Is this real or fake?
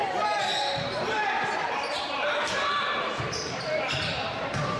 fake